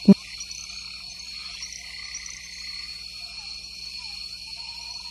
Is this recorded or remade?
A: recorded